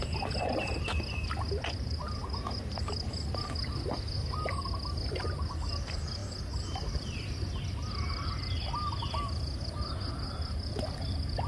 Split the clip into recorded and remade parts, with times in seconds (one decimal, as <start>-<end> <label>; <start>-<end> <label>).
0.0-11.5 recorded